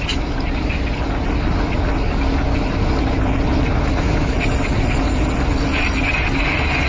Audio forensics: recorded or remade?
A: recorded